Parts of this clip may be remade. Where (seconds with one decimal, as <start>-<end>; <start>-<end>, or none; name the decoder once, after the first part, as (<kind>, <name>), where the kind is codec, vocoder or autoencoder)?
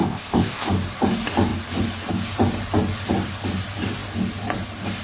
0.0-0.7 (codec, ZipCodec)